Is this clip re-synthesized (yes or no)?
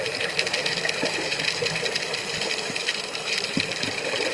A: yes